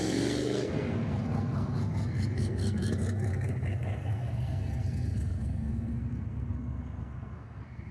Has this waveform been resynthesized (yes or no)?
yes